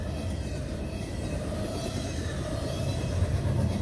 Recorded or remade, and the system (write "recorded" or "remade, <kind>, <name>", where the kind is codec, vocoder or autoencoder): recorded